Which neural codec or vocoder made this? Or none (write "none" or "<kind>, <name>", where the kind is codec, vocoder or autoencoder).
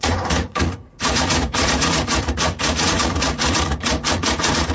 vocoder, Vocos